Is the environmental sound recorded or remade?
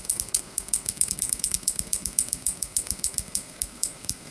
remade